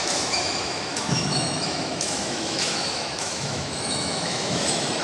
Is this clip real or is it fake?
fake